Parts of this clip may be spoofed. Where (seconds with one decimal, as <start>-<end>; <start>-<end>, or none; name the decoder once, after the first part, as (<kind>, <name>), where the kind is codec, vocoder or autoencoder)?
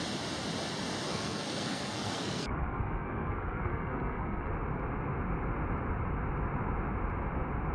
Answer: 1.1-4.5 (codec, SNAC)